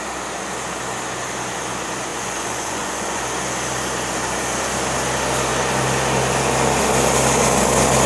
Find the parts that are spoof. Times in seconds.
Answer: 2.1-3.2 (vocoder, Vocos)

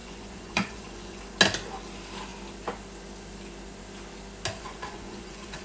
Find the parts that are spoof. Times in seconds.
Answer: 0.0-1.2 (vocoder, Vocos); 4.6-5.6

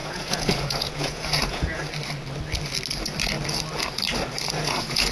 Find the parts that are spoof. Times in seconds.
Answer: 0.0-1.8 (vocoder, Vocos); 4.6-5.1

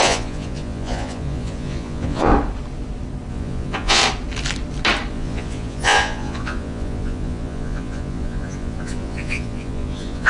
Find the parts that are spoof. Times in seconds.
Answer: 0.0-2.3 (vocoder, Vocos); 3.3-4.0; 5.1-10.3

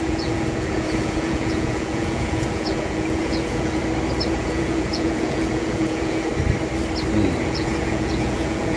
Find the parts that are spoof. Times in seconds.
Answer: 0.0-3.8 (vocoder, Vocos); 4.3-6.3; 7.4-8.8

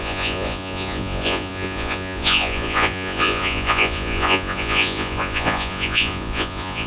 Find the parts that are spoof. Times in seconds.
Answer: 0.0-6.9 (vocoder, Vocos)

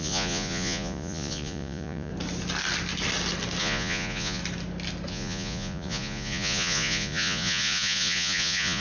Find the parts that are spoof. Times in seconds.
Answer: 0.0-2.1 (vocoder, Vocos); 3.6-4.4; 5.1-8.8